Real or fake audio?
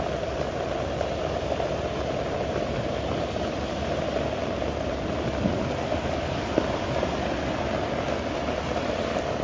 fake